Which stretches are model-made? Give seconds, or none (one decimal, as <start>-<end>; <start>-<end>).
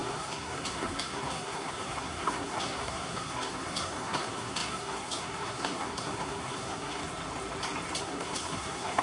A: 0.0-7.0; 8.0-9.0